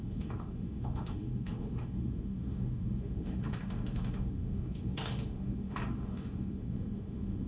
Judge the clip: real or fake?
fake